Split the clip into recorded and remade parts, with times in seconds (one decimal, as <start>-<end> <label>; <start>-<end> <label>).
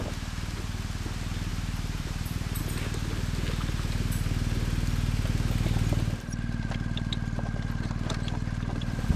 0.0-1.5 recorded; 1.5-2.6 remade; 2.6-9.2 recorded